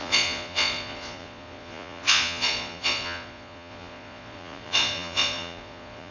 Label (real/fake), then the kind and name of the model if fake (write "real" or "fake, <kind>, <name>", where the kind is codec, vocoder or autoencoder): fake, vocoder, Vocos